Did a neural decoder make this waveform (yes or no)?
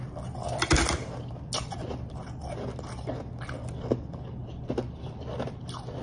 no